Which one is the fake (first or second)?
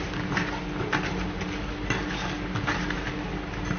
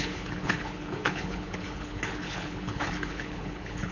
second